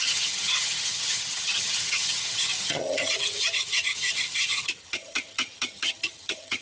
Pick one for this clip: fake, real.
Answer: fake